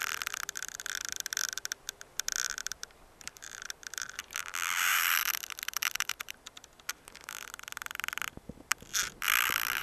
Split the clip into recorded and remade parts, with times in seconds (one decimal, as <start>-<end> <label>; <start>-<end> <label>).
0.0-2.6 recorded; 2.6-4.2 remade; 4.2-4.9 recorded; 4.9-6.3 remade; 6.3-9.8 recorded